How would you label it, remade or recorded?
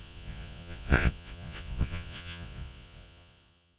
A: remade